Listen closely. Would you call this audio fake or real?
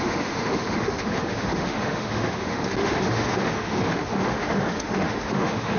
fake